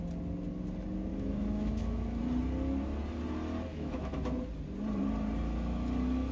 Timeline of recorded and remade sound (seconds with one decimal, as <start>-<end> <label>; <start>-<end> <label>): 0.0-1.1 recorded; 1.1-2.2 remade; 2.2-3.7 recorded; 3.7-4.4 remade; 4.4-6.3 recorded